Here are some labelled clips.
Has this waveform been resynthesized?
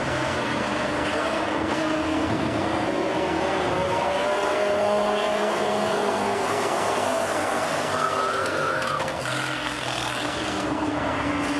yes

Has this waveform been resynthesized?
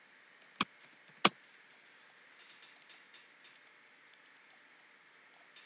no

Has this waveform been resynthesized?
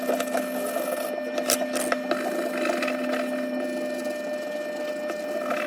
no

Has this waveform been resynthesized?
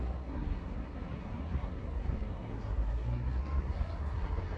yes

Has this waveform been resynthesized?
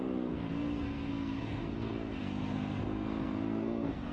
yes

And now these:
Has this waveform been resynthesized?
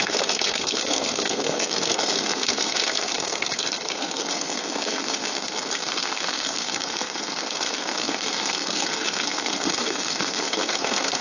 yes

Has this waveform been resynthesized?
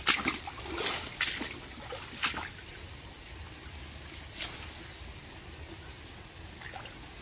no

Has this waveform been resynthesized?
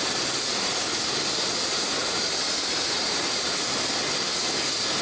no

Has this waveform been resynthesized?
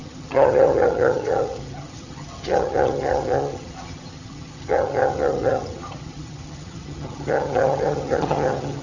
yes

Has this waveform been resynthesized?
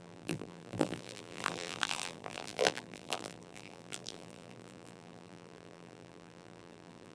yes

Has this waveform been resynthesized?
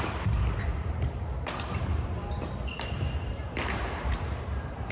yes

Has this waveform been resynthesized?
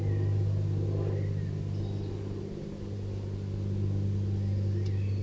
no